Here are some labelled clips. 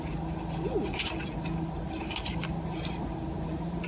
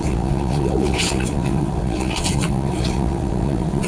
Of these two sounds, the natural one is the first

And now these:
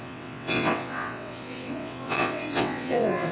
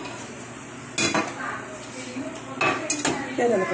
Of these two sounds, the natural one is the second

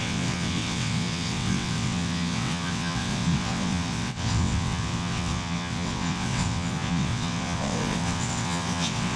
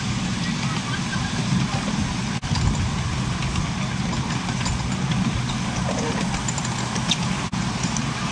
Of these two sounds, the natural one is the second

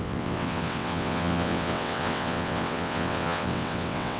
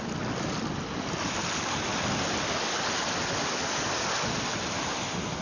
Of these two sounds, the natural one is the second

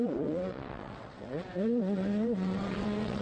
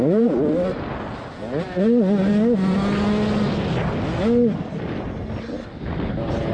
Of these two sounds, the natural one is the second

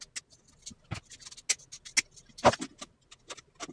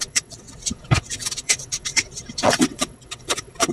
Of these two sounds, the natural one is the first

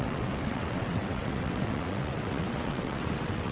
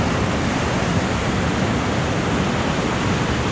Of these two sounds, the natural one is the second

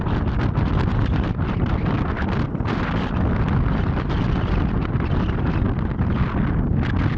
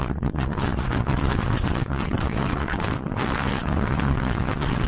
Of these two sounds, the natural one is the first